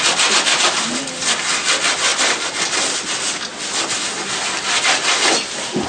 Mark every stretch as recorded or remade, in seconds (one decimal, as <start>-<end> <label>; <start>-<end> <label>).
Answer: 0.0-5.9 recorded